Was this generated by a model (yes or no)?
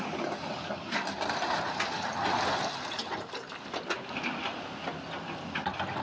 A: no